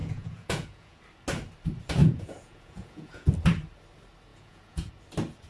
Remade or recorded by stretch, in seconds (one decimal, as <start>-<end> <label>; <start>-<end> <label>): 0.0-1.0 remade; 1.0-2.0 recorded; 2.0-3.3 remade; 3.3-4.3 recorded; 4.3-4.9 remade; 4.9-5.5 recorded